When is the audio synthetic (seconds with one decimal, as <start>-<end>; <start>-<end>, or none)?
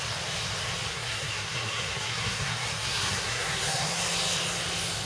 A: 0.9-4.0